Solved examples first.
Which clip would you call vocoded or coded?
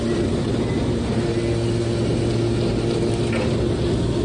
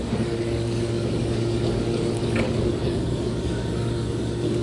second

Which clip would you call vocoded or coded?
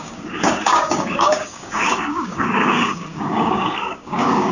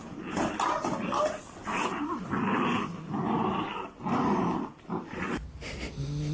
first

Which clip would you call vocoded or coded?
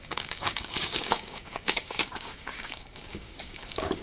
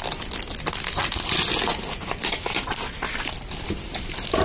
first